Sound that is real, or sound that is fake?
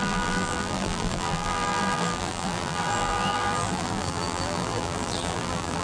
fake